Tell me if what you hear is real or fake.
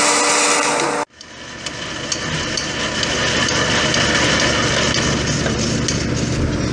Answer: real